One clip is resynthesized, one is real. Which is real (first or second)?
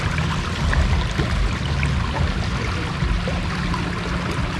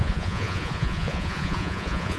first